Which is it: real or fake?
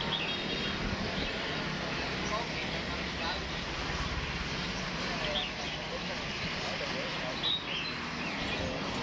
real